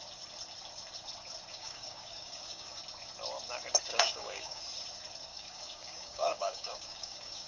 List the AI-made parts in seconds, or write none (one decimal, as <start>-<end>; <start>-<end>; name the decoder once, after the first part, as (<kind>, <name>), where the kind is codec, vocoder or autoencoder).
1.5-2.8 (codec, DAC); 3.9-4.6; 5.3-7.5